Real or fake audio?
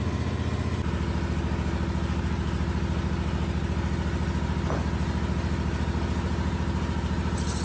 real